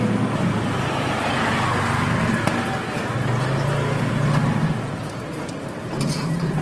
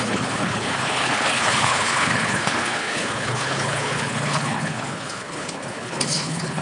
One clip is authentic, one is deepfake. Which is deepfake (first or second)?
second